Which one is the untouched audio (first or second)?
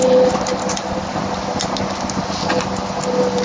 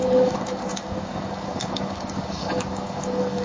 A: first